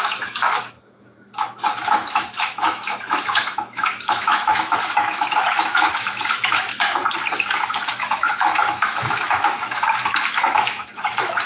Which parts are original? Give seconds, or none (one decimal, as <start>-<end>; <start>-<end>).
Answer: 7.0-7.9